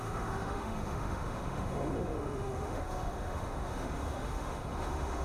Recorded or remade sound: remade